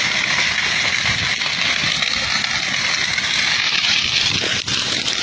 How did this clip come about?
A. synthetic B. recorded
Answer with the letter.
B